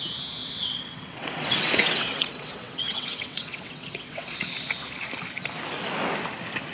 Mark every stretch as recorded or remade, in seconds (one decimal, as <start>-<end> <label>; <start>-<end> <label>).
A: 0.0-0.4 recorded; 0.4-4.4 remade; 4.4-6.7 recorded